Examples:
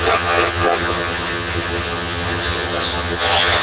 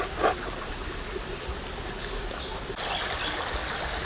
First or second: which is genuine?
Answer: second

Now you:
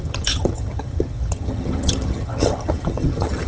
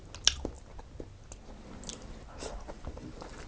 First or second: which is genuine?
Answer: second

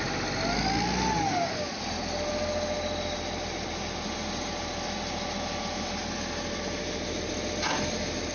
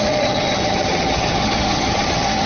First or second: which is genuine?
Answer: first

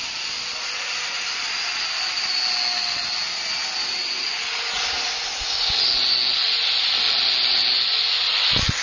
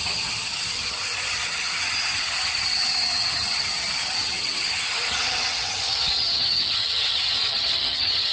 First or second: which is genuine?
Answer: first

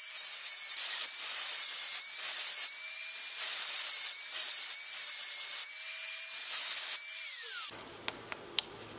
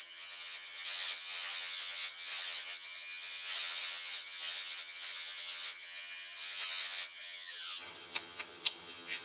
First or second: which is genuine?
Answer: first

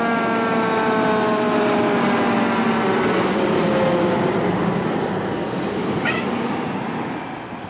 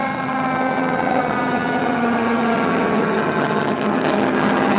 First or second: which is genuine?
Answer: first